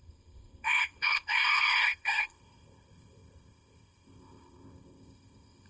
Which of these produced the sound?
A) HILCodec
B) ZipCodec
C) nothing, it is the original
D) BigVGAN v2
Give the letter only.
B